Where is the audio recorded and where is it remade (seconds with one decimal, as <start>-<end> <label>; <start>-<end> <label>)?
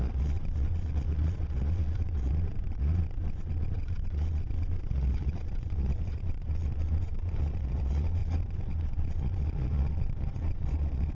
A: 0.0-11.1 remade